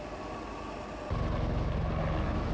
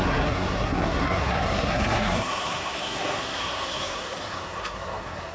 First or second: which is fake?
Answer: second